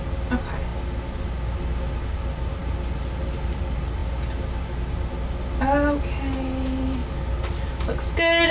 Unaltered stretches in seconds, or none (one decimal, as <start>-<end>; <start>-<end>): 0.0-8.5